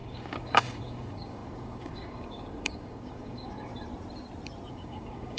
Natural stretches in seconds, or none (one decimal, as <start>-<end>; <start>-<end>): 3.7-4.7